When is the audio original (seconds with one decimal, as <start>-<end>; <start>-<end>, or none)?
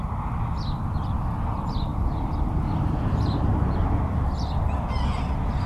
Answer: 0.0-5.7